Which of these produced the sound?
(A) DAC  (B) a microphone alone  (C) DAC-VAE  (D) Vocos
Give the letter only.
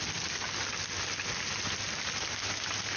B